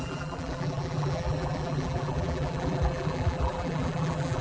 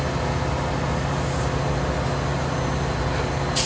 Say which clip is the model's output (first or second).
first